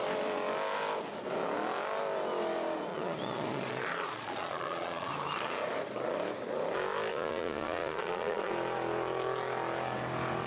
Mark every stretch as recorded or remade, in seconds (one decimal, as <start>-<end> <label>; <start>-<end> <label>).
0.0-2.9 recorded; 2.9-5.1 remade; 5.1-7.1 recorded; 7.1-8.5 remade; 8.5-10.5 recorded